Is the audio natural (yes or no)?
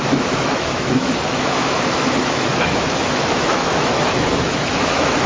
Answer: no